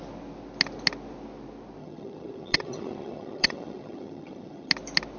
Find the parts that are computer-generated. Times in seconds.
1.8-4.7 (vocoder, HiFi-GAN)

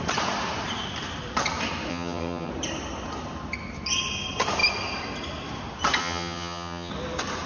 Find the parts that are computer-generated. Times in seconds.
1.9-2.5 (vocoder, HiFi-GAN); 6.0-6.9

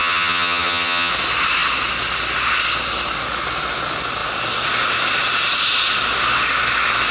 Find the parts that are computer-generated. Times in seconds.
0.0-1.1 (vocoder, HiFi-GAN)

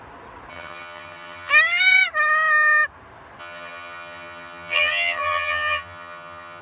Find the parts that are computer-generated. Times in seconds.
0.5-1.5 (vocoder, HiFi-GAN); 3.4-6.6

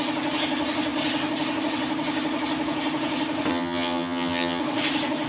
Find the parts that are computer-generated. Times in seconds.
3.5-4.6 (vocoder, HiFi-GAN)

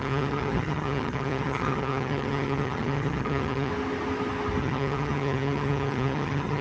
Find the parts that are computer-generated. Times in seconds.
0.0-3.7 (vocoder, HiFi-GAN); 4.6-6.6

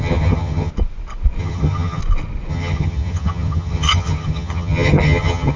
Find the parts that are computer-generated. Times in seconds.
0.0-0.7 (vocoder, HiFi-GAN); 1.4-2.0; 2.5-5.6